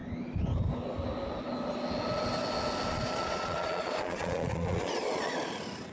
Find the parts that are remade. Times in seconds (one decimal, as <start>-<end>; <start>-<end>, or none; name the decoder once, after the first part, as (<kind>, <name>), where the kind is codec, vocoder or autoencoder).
2.9-5.5 (vocoder, Vocos)